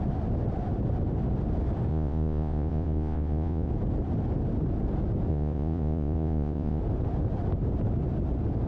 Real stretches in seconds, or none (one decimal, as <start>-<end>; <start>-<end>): 0.0-1.9; 3.7-5.3; 6.8-8.7